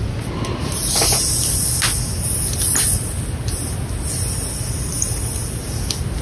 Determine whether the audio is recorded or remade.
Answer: recorded